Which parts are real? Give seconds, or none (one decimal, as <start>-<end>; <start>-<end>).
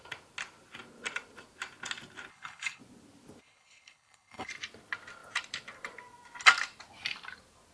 0.0-2.3; 2.8-3.4; 4.5-7.7